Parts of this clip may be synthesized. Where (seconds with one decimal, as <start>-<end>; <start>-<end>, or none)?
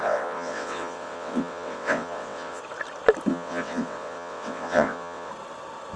0.0-2.6; 3.3-5.3